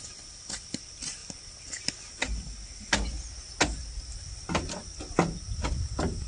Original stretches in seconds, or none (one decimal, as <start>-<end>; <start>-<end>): 0.0-6.3